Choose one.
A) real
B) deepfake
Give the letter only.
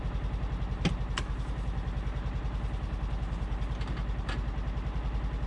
A